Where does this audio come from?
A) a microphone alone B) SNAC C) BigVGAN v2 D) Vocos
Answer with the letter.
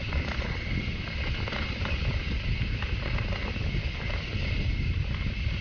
A